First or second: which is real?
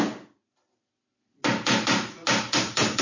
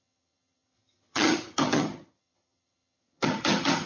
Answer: first